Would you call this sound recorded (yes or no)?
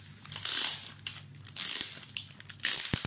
yes